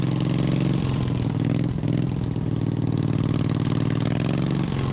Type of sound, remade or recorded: recorded